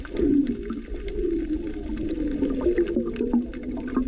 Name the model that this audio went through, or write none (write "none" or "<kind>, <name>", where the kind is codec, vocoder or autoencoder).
none